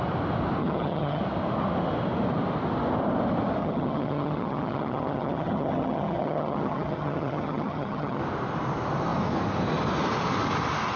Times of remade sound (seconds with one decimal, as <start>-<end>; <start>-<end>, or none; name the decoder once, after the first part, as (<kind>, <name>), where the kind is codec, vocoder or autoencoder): 0.6-1.2 (vocoder, HiFi-GAN); 3.6-8.2